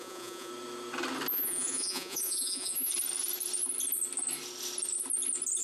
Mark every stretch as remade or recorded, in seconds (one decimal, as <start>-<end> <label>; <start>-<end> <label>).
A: 0.0-0.5 remade; 0.5-1.3 recorded; 1.3-2.9 remade; 2.9-5.6 recorded